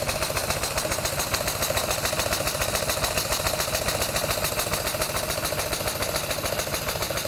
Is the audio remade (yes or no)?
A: no